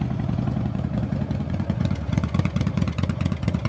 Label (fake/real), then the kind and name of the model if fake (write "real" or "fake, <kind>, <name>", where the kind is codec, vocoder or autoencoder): fake, vocoder, Vocos